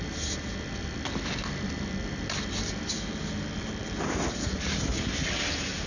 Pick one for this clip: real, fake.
real